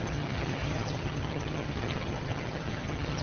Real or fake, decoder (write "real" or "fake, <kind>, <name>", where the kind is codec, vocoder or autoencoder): fake, vocoder, HiFi-GAN